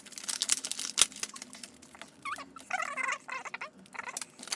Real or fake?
real